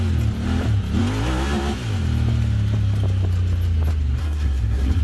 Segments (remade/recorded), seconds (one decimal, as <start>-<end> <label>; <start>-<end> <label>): 0.0-4.2 recorded; 4.2-5.0 remade